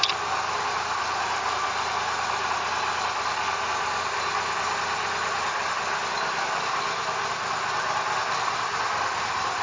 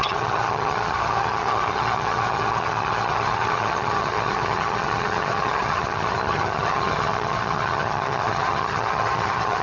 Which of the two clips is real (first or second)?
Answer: first